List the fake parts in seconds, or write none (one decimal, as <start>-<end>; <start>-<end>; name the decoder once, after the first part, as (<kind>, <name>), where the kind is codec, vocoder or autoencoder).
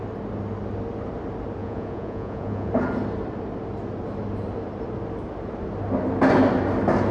1.6-2.7 (vocoder, Vocos)